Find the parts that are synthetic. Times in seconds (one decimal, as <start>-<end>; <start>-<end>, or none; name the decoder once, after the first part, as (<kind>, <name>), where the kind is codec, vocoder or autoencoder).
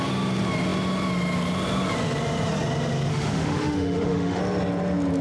3.1-4.4 (autoencoder, DAC-VAE)